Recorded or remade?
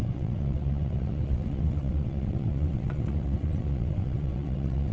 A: remade